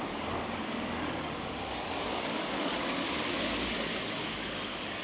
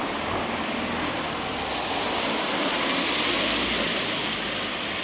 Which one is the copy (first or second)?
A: first